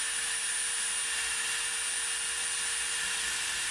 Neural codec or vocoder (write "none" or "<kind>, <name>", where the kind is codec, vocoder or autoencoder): none